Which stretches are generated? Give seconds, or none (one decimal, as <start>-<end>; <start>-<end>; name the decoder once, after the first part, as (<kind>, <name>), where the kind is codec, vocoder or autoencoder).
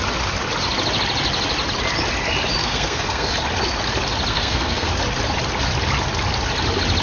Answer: 2.6-3.3 (codec, SNAC); 4.3-4.9